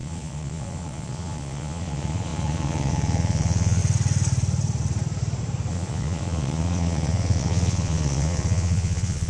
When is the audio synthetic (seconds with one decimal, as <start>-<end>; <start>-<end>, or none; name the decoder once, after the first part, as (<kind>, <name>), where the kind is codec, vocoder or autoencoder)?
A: 0.0-3.8 (vocoder, Vocos); 5.7-9.3